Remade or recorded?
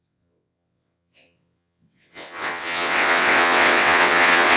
remade